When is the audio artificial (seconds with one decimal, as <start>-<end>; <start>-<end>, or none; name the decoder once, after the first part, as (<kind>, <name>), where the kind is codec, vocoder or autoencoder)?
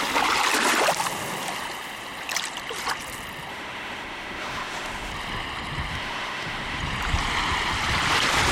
3.5-5.1 (autoencoder, DAC-VAE); 5.9-6.8